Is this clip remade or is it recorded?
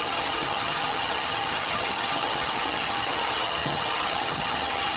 remade